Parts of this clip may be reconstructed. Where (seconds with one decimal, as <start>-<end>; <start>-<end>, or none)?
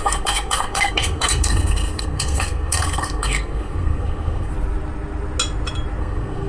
0.0-4.5; 6.0-6.5